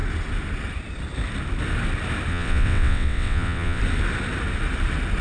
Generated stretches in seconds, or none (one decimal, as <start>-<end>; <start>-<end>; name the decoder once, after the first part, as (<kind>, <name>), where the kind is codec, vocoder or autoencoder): 2.3-3.8 (vocoder, WaveNeXt)